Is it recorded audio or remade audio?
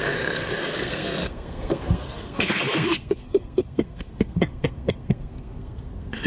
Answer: remade